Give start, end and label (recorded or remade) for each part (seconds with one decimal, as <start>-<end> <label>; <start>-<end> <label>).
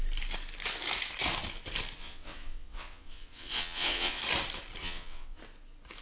0.0-2.0 recorded; 2.0-4.2 remade; 4.2-4.8 recorded; 4.8-5.4 remade; 5.4-6.0 recorded